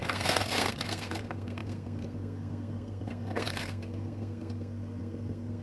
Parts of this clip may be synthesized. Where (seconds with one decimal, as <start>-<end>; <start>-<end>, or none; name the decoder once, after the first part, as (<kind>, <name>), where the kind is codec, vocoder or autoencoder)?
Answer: 0.0-5.6 (codec, SNAC)

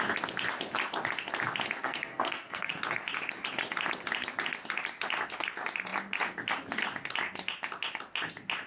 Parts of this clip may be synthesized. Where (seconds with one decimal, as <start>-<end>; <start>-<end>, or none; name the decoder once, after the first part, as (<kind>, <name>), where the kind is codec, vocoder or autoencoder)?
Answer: 1.8-2.7 (codec, SNAC)

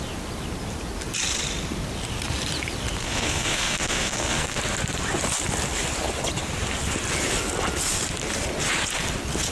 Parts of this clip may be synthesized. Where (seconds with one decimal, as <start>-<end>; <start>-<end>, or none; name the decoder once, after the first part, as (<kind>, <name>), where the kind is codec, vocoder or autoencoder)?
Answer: 3.0-4.6 (codec, SNAC)

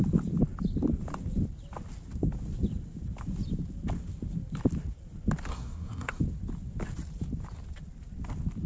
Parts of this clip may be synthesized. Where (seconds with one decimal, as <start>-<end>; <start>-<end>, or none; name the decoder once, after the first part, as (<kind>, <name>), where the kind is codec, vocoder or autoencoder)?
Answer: 5.5-6.2 (codec, SNAC)

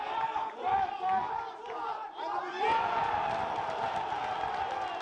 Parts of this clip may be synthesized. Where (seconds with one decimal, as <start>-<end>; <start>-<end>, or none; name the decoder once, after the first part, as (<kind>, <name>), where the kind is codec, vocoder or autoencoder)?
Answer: none

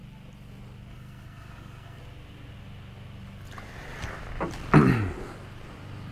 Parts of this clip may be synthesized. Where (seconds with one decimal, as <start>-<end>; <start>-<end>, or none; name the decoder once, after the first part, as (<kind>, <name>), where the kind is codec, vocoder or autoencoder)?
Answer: 0.9-2.0 (codec, SNAC)

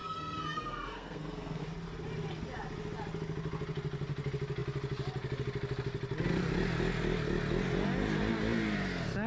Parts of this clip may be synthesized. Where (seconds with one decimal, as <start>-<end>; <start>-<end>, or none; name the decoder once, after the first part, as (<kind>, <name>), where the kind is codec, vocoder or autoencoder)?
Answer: 0.0-1.6 (codec, SNAC)